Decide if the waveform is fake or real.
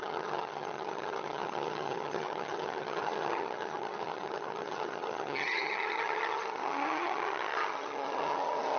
fake